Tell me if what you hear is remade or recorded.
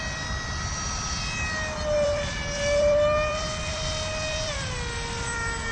remade